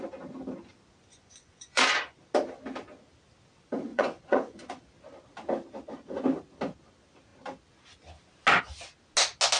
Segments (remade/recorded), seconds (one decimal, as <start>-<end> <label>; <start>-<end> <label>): 0.0-1.1 recorded; 1.1-1.8 remade; 1.8-3.9 recorded; 3.9-4.8 remade; 4.8-9.6 recorded